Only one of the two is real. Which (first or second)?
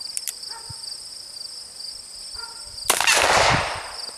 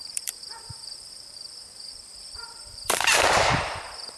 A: first